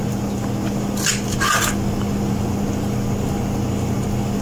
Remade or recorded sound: recorded